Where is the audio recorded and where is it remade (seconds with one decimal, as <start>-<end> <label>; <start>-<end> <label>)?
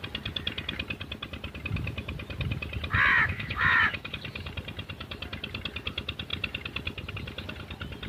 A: 0.0-3.1 recorded; 3.1-4.1 remade; 4.1-8.1 recorded